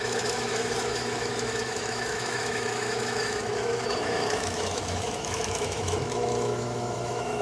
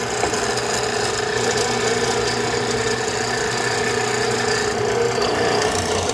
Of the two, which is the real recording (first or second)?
second